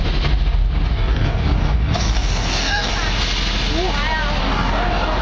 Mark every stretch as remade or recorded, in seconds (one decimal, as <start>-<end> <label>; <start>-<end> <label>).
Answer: 0.0-0.9 recorded; 0.9-2.9 remade; 2.9-4.4 recorded; 4.4-5.2 remade